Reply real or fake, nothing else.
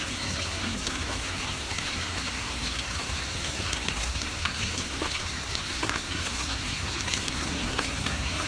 fake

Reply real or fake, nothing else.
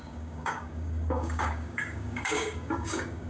fake